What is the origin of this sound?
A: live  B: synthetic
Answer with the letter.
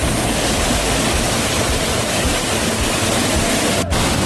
A